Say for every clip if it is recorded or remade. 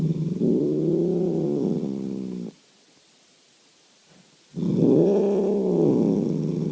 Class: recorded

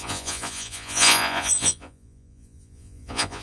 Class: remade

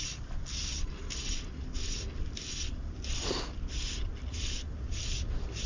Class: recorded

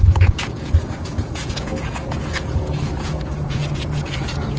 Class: remade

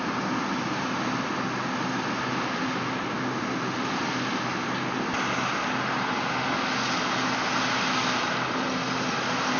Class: recorded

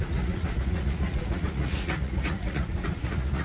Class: remade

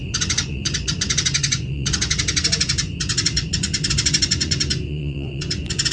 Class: remade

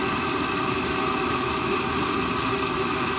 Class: recorded